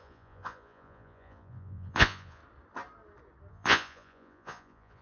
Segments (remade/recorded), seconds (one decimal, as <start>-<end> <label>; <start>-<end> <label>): 0.0-2.4 remade; 2.4-3.5 recorded; 3.5-5.0 remade